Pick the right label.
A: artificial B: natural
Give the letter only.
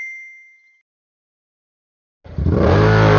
B